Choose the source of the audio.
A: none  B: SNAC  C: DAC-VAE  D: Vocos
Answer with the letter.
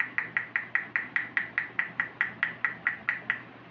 A